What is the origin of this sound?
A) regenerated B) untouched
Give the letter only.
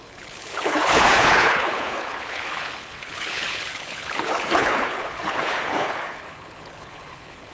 A